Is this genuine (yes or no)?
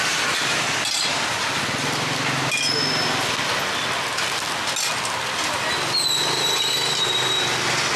yes